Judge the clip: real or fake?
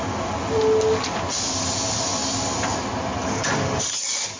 real